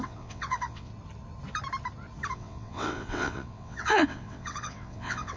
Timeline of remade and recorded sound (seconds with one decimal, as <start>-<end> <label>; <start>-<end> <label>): 0.0-0.9 remade; 0.9-2.3 recorded; 2.3-5.4 remade